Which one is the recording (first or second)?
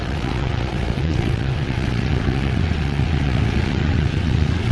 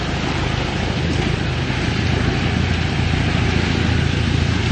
second